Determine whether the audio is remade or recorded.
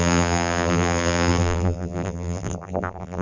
remade